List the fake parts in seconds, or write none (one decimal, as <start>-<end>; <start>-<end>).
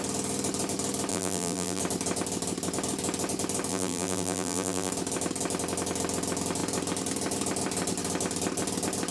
1.1-1.8; 3.7-4.9